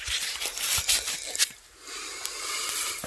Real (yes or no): yes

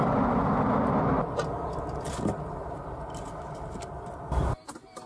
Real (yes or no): yes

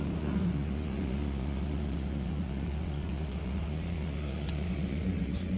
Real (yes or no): no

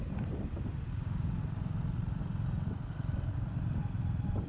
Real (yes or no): yes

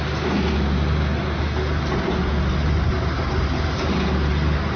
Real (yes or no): yes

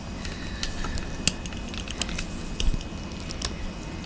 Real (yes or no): yes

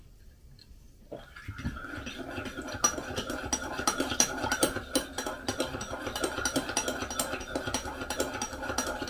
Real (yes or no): yes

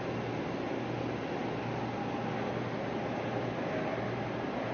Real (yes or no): yes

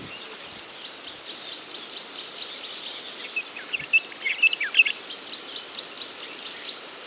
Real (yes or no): yes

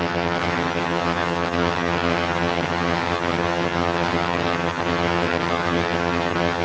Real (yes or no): no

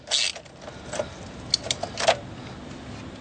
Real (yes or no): yes